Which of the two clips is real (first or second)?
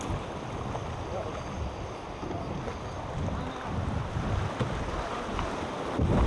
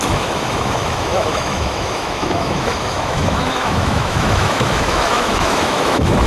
first